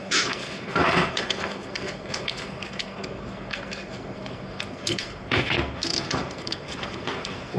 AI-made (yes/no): yes